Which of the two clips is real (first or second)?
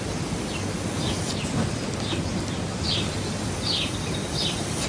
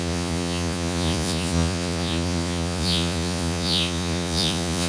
first